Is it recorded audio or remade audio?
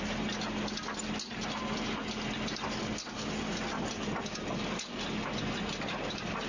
recorded